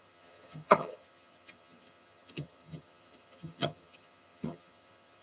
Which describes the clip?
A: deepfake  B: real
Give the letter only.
A